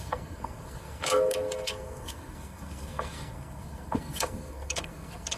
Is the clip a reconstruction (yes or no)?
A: yes